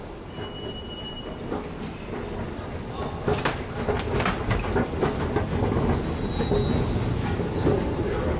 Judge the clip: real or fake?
real